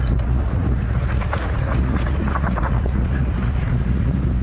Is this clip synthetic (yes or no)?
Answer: yes